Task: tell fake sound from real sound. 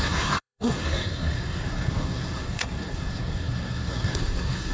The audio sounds fake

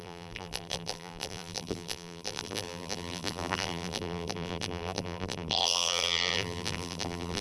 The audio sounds fake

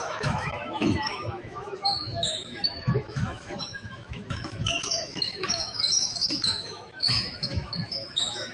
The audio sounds fake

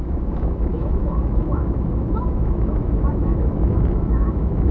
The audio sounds fake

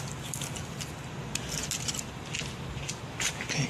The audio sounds real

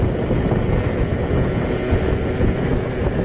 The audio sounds real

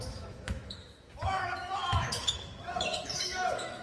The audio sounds fake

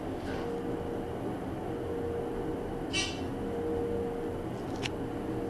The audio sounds real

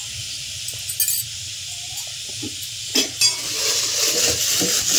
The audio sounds real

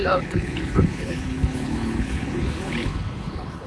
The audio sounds fake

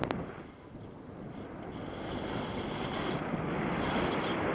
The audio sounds real